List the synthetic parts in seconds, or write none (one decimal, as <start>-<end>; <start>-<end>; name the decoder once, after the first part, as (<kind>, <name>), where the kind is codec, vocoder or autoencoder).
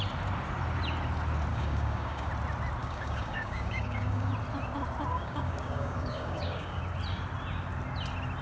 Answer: 1.5-2.3 (codec, DAC); 2.8-4.3; 5.1-6.8